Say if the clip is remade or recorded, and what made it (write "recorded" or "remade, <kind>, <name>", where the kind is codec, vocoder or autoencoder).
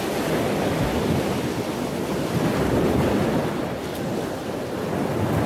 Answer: recorded